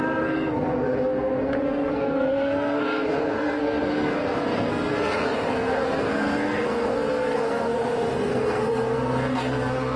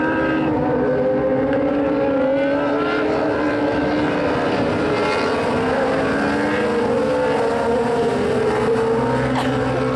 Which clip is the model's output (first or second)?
first